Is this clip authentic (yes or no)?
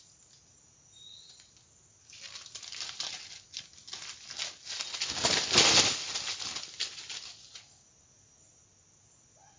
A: yes